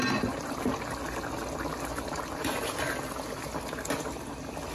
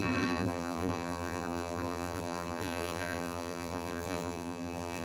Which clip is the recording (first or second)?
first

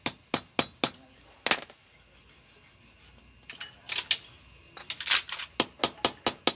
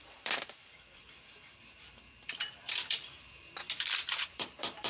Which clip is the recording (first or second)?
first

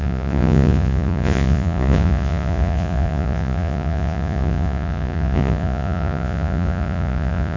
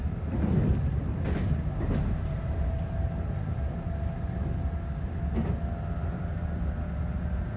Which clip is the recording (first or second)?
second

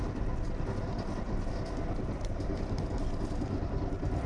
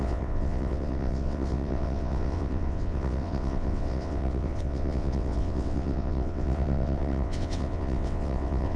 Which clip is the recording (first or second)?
first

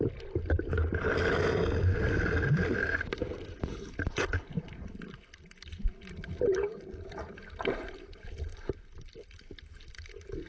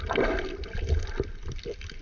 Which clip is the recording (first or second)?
second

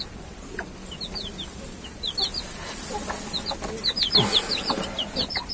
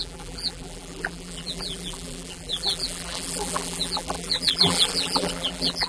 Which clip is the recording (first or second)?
first